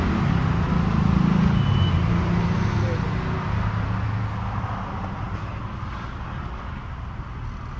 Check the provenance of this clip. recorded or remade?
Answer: recorded